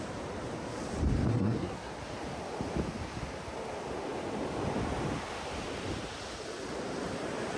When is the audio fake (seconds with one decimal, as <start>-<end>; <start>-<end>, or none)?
1.3-1.9